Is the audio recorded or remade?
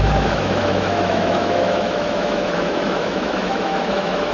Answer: remade